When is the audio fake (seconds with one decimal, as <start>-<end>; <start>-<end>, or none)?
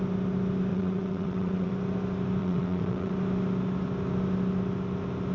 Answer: 0.7-1.7; 2.4-3.1